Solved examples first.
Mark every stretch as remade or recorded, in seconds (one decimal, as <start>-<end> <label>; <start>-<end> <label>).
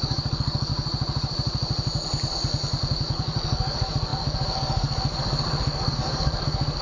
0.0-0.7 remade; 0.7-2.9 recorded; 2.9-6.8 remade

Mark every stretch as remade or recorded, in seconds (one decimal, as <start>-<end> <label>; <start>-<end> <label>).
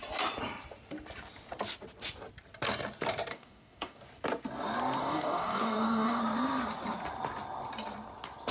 0.0-3.3 recorded; 3.3-4.0 remade; 4.0-5.0 recorded; 5.0-6.2 remade; 6.2-8.5 recorded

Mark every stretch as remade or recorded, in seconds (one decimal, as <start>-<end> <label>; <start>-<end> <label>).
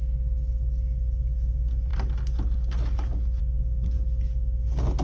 0.0-5.0 recorded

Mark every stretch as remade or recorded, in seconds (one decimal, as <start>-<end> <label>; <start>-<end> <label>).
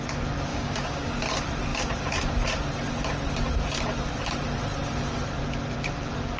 0.0-0.5 recorded; 0.5-1.2 remade; 1.2-6.4 recorded